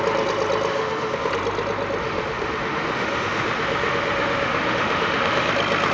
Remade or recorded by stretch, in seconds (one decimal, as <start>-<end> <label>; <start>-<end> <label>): 0.0-0.7 recorded; 0.7-1.3 remade; 1.3-2.0 recorded; 2.0-5.5 remade; 5.5-5.9 recorded